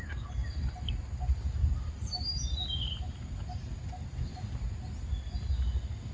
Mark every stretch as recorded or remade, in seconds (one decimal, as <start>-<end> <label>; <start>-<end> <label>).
0.0-6.1 recorded